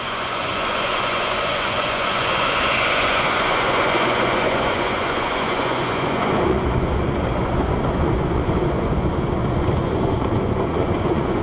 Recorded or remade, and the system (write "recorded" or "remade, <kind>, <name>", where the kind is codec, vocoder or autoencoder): remade, vocoder, Vocos